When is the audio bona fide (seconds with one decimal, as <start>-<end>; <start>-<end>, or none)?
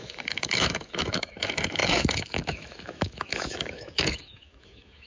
none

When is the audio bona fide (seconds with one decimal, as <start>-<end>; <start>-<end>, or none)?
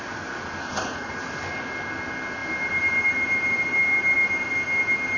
0.0-0.6; 1.1-5.2